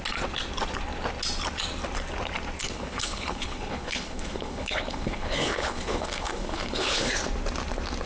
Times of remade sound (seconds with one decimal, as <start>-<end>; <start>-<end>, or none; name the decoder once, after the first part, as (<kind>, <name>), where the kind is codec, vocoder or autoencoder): 2.6-7.1 (codec, HILCodec)